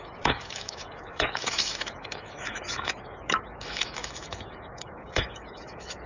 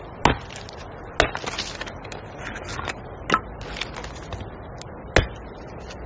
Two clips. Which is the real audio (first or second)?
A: second